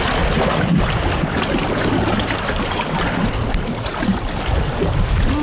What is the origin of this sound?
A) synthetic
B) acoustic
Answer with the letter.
B